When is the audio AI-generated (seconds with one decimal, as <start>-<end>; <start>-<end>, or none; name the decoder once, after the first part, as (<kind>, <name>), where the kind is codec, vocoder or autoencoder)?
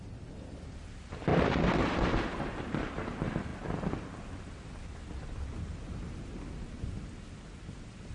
1.3-2.0 (vocoder, BigVGAN v2)